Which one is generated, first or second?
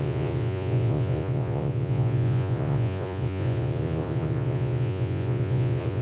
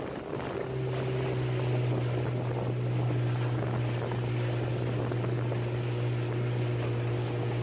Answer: first